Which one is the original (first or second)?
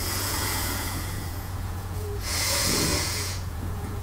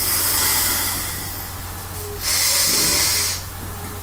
second